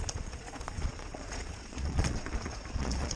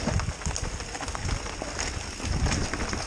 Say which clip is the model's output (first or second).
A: first